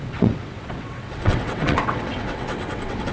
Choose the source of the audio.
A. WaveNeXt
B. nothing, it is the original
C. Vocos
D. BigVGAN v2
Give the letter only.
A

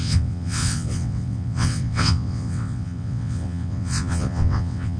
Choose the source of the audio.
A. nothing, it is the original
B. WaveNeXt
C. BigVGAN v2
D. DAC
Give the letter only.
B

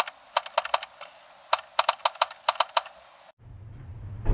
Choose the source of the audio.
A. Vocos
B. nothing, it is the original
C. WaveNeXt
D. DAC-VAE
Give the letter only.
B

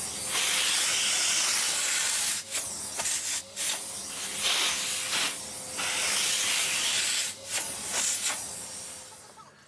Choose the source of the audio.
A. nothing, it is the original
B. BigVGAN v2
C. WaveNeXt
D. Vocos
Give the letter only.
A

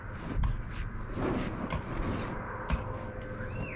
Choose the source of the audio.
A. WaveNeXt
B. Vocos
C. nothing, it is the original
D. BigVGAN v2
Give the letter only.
C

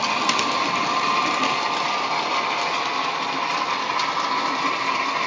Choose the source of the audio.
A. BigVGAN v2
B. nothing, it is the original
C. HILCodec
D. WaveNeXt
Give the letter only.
B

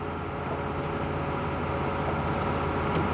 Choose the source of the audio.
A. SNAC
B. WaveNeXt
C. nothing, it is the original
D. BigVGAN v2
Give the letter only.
C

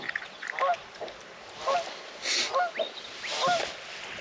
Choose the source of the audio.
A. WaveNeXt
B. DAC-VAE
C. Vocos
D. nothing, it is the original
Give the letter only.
D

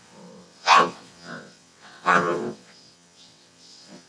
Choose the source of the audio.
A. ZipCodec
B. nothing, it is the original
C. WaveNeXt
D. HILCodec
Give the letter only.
C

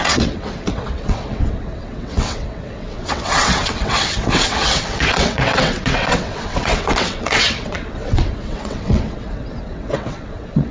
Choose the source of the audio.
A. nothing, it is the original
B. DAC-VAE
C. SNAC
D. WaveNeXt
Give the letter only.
D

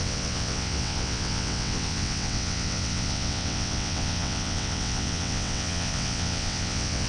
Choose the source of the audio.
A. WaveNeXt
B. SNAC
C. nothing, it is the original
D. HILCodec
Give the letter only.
A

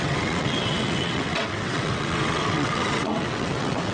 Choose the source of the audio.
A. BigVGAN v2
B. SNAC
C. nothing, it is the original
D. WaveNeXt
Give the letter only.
D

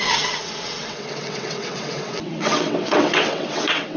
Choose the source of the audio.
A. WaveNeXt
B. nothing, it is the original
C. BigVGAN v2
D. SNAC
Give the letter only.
A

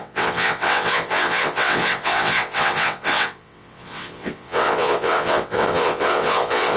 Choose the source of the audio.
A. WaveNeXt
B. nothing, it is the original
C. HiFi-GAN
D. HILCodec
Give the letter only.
A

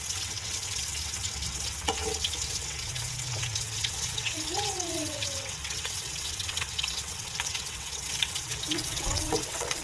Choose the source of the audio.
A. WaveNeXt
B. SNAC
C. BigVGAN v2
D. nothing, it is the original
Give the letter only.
A